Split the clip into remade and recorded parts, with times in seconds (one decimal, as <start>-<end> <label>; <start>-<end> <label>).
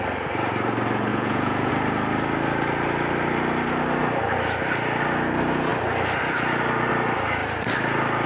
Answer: 0.0-1.1 recorded; 1.1-1.7 remade; 1.7-8.3 recorded